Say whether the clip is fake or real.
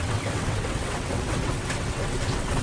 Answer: fake